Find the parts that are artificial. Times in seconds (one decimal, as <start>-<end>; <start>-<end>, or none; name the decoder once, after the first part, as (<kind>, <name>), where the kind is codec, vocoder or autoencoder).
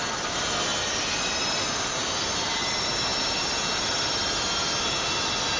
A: none